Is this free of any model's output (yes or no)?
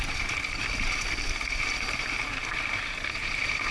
no